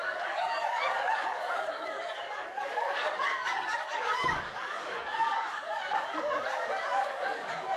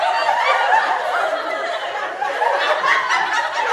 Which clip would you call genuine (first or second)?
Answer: second